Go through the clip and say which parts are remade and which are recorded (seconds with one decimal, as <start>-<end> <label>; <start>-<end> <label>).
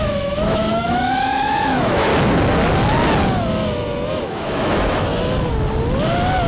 0.0-2.1 remade; 2.1-4.2 recorded; 4.2-5.1 remade; 5.1-6.5 recorded